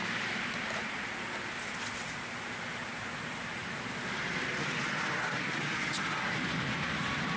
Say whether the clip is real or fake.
real